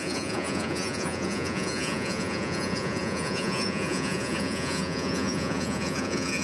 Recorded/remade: remade